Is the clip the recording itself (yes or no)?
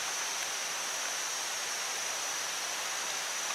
yes